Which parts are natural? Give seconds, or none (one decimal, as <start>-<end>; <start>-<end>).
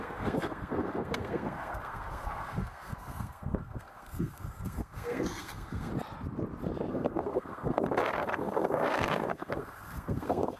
5.9-6.9